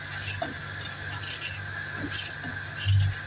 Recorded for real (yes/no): yes